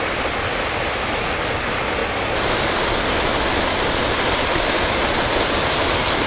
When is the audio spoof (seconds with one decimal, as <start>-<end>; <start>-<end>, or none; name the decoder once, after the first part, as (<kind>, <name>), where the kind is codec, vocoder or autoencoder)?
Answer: none